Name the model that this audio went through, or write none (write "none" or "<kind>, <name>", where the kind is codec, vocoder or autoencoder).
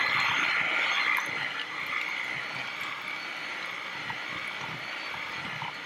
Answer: none